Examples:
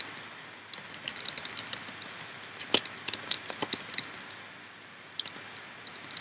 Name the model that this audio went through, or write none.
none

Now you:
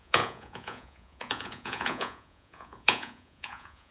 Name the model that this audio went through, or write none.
vocoder, Vocos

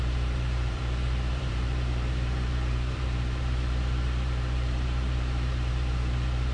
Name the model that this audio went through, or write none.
vocoder, BigVGAN v2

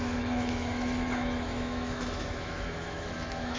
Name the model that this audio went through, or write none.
autoencoder, DAC-VAE